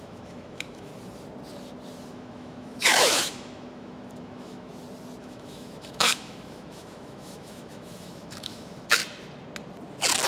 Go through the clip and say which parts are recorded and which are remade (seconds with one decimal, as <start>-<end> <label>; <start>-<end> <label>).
0.0-0.9 remade; 0.9-2.1 recorded; 2.1-4.7 remade; 4.7-5.2 recorded; 5.2-9.0 remade; 9.0-10.3 recorded